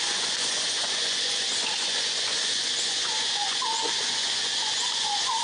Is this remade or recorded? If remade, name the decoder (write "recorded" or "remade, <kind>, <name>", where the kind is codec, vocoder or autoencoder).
remade, vocoder, Vocos